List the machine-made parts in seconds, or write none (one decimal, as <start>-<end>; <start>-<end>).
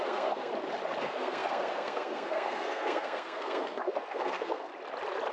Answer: 0.0-0.5; 1.0-4.7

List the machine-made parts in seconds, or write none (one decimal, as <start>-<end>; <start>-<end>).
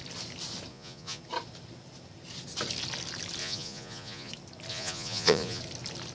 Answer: 0.7-1.2; 3.4-4.3; 4.7-5.6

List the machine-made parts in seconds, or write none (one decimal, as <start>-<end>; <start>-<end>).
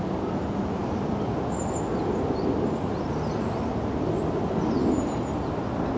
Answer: none